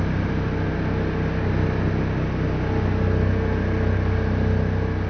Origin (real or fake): real